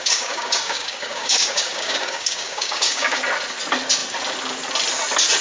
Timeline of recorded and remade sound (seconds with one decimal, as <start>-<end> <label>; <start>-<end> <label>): 0.0-3.2 remade; 3.2-5.4 recorded